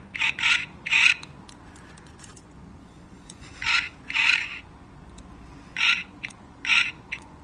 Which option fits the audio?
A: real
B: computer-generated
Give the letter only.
B